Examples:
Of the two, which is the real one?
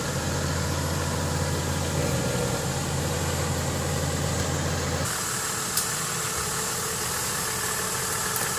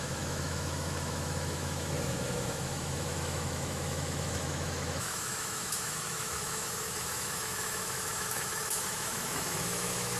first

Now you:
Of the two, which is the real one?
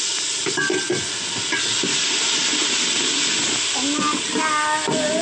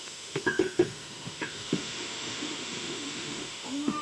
first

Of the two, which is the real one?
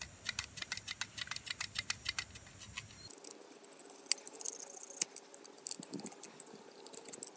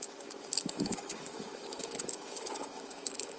first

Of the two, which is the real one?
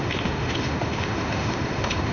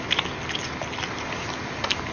second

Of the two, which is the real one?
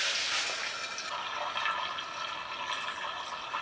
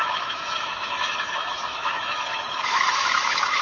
first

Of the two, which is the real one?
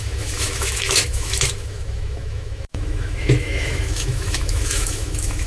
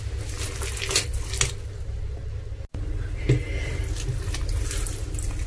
second